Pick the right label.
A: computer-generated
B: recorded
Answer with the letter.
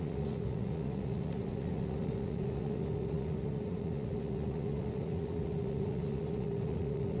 A